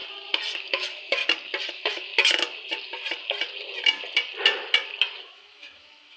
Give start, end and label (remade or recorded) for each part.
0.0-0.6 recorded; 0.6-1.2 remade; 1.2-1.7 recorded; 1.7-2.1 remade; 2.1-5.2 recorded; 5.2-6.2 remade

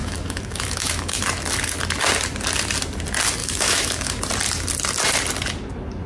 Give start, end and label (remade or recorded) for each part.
0.0-1.2 remade; 1.2-3.4 recorded; 3.4-4.2 remade; 4.2-6.1 recorded

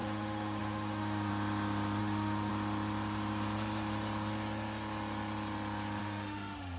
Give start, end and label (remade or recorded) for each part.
0.0-1.3 remade; 1.3-2.0 recorded; 2.0-2.5 remade; 2.5-6.0 recorded; 6.0-6.8 remade

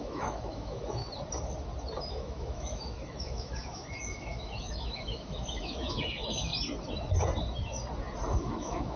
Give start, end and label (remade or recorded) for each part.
0.0-1.0 remade; 1.0-2.1 recorded; 2.1-6.5 remade; 6.5-8.3 recorded; 8.3-9.0 remade

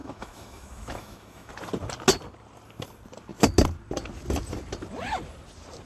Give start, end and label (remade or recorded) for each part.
0.0-1.5 remade; 1.5-5.9 recorded